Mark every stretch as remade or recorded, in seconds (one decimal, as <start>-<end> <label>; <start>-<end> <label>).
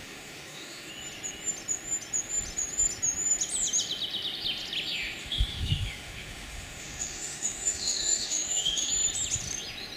0.0-0.9 remade; 0.9-5.2 recorded; 5.2-8.9 remade; 8.9-10.0 recorded